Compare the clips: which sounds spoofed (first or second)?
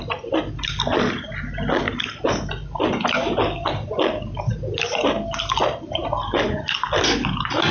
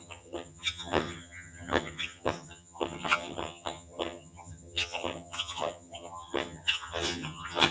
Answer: second